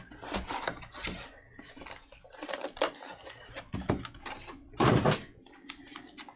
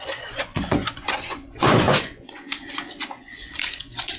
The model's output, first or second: second